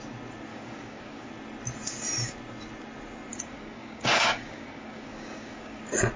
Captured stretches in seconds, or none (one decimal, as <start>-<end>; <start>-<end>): 0.0-0.5; 1.3-3.3; 5.8-6.2